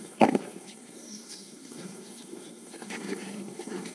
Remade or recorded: remade